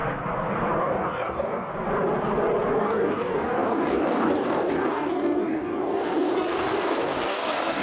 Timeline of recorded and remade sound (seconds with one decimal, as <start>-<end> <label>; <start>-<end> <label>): 0.0-0.8 recorded; 0.8-1.7 remade; 1.7-2.8 recorded; 2.8-7.8 remade